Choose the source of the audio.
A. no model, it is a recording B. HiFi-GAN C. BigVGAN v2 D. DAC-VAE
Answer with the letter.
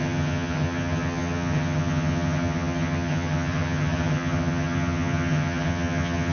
B